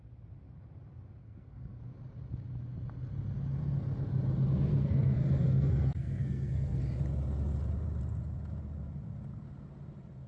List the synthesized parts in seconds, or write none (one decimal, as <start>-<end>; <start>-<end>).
1.2-1.8; 4.7-6.8